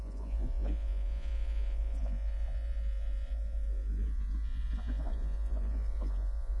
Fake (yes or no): yes